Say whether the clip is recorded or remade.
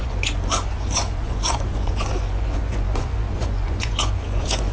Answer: remade